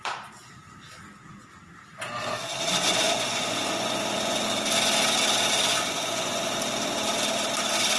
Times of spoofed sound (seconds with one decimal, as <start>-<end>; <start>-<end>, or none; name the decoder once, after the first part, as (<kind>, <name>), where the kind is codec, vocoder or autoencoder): 2.7-4.4 (vocoder, Vocos); 5.7-6.4